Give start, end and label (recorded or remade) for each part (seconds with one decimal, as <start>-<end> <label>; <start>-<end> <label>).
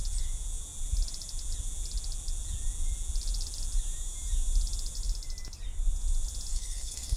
0.0-6.5 recorded; 6.5-7.2 remade